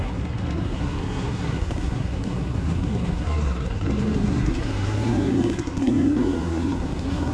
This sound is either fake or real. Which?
fake